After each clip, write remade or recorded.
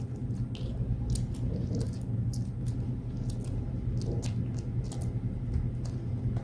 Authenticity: recorded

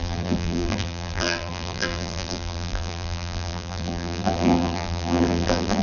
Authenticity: remade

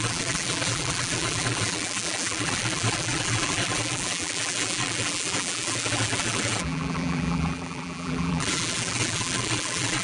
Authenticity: remade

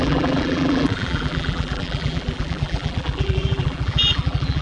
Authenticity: remade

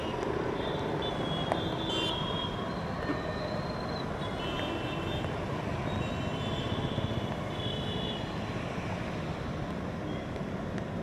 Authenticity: recorded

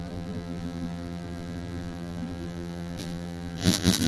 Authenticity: remade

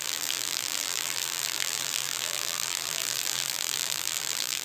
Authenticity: remade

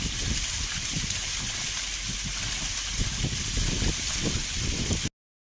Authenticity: recorded